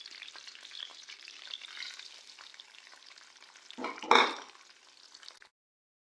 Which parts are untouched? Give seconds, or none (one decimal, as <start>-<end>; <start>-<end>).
0.0-0.9; 1.8-2.5; 3.1-6.1